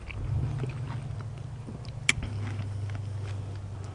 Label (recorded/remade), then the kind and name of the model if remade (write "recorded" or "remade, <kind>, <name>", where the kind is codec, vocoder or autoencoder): recorded